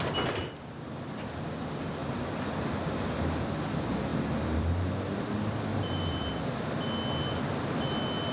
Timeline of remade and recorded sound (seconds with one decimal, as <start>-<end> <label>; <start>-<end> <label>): 0.0-2.0 recorded; 2.0-3.5 remade; 3.5-4.1 recorded; 4.1-4.9 remade; 4.9-5.7 recorded; 5.7-6.3 remade; 6.3-8.3 recorded